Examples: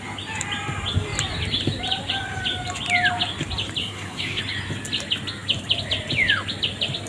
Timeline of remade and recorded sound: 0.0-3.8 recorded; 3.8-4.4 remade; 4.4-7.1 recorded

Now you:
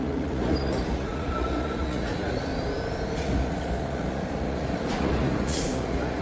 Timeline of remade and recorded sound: 0.0-2.5 remade; 2.5-3.2 recorded; 3.2-6.2 remade

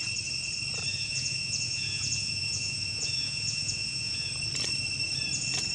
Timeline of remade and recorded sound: 0.0-0.9 recorded; 0.9-4.3 remade; 4.3-5.7 recorded

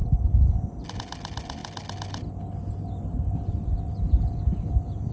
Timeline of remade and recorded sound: 0.0-5.1 recorded

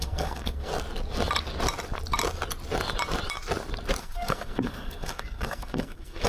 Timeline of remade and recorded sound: 0.0-0.7 remade; 0.7-4.0 recorded; 4.0-6.3 remade

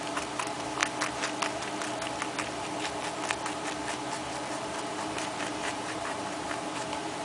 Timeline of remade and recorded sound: 0.0-0.8 remade; 0.8-4.9 recorded; 4.9-7.2 remade

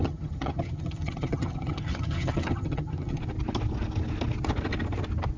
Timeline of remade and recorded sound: 0.0-3.2 remade; 3.2-5.4 recorded